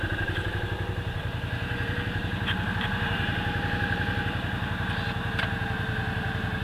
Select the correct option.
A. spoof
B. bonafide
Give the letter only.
A